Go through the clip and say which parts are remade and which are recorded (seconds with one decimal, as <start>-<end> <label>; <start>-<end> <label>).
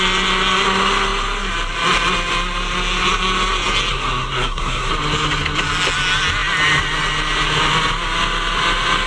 0.0-3.9 recorded; 3.9-4.9 remade; 4.9-9.1 recorded